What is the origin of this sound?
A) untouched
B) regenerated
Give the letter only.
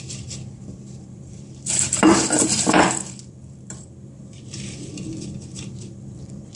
B